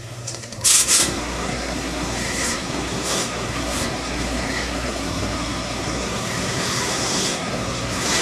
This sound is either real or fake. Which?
fake